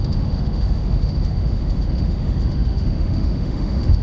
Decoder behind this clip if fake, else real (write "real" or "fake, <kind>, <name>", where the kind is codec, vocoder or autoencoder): fake, autoencoder, DAC-VAE